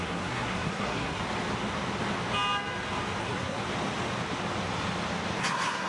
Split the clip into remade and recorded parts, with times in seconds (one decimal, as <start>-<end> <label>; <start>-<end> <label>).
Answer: 0.0-1.2 remade; 1.2-3.2 recorded; 3.2-3.6 remade; 3.6-5.4 recorded; 5.4-5.9 remade